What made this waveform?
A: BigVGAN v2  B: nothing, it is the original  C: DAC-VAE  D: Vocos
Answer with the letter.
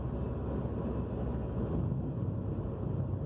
B